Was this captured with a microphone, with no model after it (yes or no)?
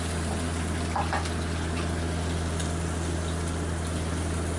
yes